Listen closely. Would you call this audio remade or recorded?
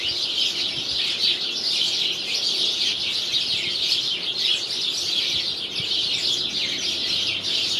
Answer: recorded